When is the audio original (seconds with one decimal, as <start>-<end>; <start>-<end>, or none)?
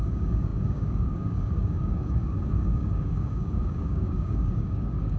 none